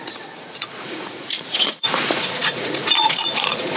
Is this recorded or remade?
remade